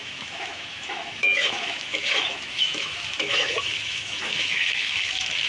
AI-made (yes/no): yes